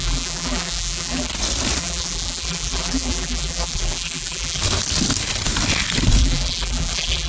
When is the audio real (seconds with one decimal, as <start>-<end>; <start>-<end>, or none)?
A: 1.3-1.8; 4.6-6.2